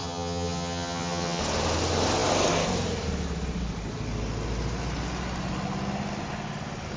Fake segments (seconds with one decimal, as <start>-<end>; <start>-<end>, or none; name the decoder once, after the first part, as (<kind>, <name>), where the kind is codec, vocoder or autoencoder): 0.0-1.4 (vocoder, HiFi-GAN)